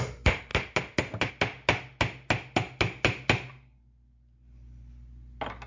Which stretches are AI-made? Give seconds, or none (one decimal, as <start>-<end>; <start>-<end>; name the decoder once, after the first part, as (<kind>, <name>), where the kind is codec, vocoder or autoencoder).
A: none